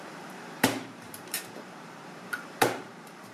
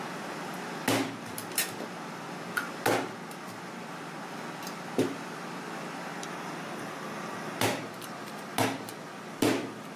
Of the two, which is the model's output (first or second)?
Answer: first